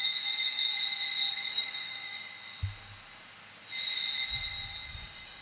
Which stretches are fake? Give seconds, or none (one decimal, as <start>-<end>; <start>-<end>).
0.0-0.7; 1.3-2.3; 4.9-5.4